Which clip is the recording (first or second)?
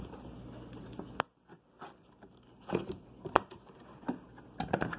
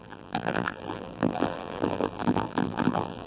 first